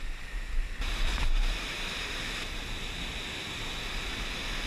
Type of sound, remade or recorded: recorded